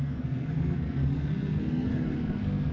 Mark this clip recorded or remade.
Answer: remade